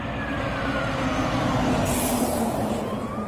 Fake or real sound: fake